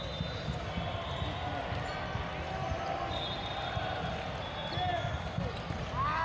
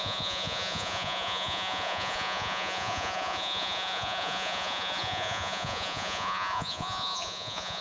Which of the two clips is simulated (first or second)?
second